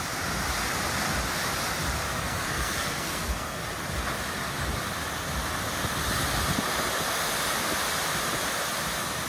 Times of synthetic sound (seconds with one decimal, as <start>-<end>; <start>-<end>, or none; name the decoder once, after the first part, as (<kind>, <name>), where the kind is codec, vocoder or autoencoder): 2.1-3.6 (codec, SNAC)